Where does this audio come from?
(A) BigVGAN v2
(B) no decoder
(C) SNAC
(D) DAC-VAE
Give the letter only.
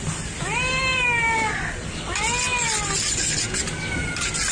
B